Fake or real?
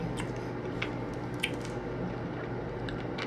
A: real